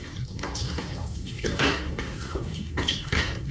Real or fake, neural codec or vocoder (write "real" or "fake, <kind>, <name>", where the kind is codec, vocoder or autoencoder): fake, codec, SNAC